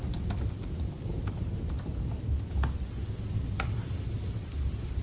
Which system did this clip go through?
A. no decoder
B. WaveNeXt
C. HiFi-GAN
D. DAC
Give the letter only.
A